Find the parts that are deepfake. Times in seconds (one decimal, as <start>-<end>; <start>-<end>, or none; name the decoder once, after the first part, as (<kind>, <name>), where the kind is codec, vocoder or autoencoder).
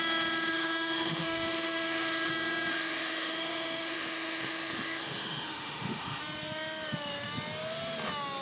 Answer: 0.5-2.3 (autoencoder, DAC-VAE); 2.7-6.2